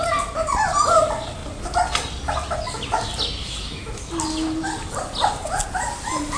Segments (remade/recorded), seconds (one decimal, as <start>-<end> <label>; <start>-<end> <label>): 0.0-3.4 recorded; 3.4-4.1 remade; 4.1-6.4 recorded